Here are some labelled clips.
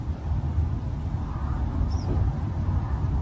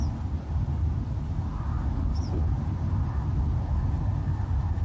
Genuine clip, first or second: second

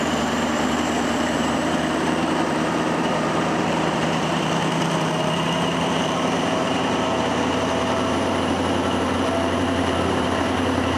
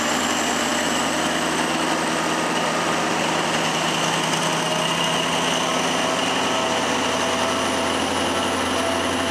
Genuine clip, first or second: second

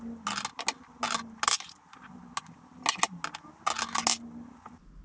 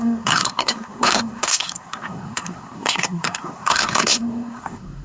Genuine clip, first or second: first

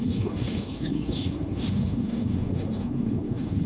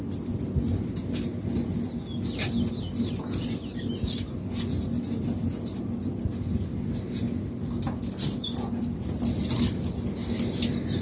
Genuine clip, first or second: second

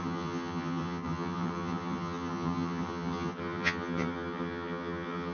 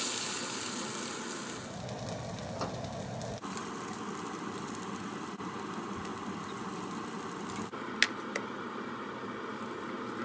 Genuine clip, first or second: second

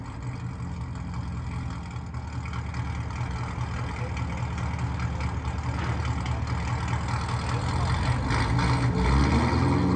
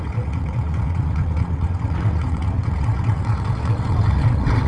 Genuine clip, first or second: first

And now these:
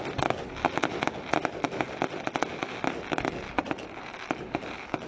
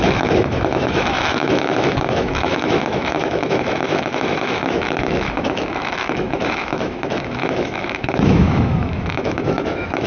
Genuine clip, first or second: first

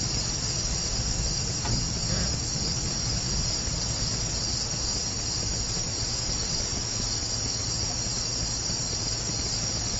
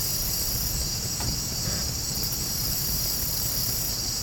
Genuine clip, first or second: first